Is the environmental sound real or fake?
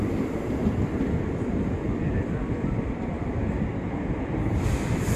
real